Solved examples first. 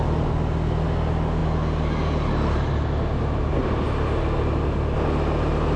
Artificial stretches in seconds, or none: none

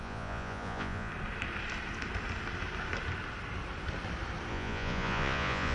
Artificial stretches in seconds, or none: 0.0-1.1 (vocoder, Vocos); 4.5-5.7